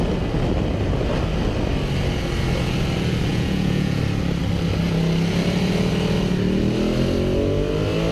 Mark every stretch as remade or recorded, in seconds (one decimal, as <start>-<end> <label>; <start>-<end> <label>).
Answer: 0.0-3.3 recorded; 3.3-4.0 remade; 4.0-8.1 recorded